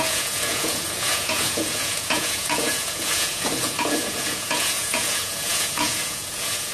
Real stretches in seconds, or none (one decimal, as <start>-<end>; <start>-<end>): none